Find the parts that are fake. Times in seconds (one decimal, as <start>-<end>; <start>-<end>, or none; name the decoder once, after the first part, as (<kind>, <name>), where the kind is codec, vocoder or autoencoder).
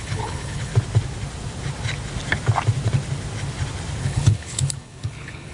0.0-0.7 (codec, HILCodec); 4.0-5.5